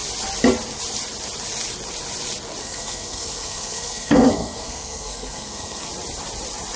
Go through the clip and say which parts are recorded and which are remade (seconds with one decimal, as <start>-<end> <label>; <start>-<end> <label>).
0.0-2.6 recorded; 2.6-5.9 remade; 5.9-6.8 recorded